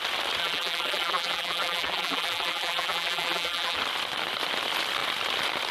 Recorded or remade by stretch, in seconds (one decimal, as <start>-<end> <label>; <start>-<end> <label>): 0.0-0.4 recorded; 0.4-3.8 remade; 3.8-5.7 recorded